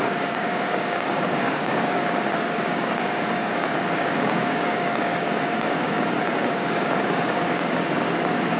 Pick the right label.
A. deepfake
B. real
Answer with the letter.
A